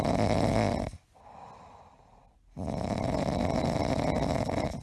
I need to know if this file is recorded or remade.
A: recorded